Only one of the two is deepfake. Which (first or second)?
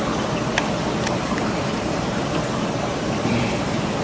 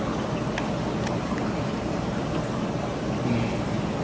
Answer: first